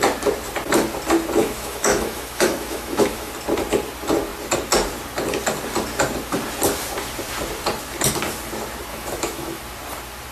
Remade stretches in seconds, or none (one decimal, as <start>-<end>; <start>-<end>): 1.4-3.3; 8.9-9.6